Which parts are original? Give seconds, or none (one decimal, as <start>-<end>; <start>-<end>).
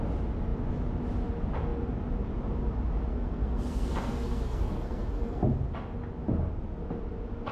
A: 0.0-3.1; 5.4-7.5